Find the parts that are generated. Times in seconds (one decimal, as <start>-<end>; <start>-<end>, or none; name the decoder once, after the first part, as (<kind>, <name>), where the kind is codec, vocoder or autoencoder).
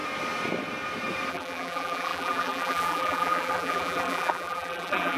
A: 1.3-5.2 (vocoder, BigVGAN v2)